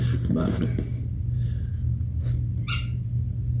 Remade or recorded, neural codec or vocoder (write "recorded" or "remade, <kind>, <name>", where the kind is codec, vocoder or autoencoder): recorded